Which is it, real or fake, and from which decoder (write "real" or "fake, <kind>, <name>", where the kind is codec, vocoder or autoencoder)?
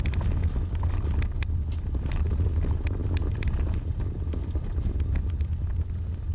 real